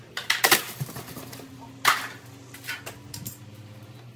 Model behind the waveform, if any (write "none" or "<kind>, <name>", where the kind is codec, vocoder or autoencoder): none